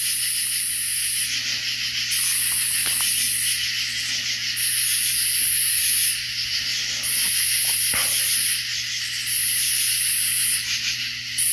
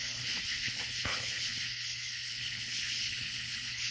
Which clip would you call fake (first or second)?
second